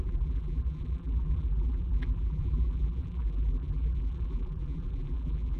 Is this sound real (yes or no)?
no